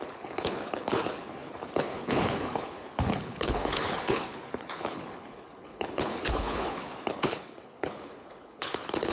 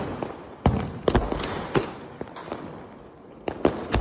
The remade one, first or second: first